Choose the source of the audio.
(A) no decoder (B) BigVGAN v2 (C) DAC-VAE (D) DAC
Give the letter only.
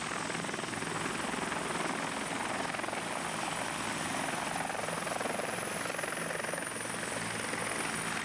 A